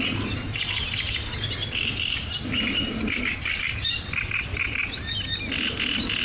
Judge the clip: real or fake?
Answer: real